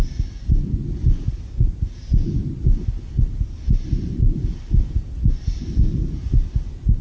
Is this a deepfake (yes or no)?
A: no